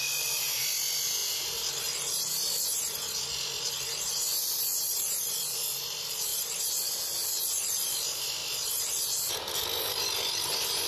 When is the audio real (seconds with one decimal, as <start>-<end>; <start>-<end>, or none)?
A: 8.4-9.3